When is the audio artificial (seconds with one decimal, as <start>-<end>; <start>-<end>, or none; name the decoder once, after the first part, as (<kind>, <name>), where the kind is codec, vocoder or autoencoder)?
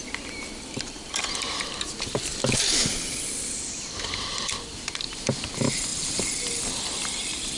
0.0-7.6 (vocoder, BigVGAN v2)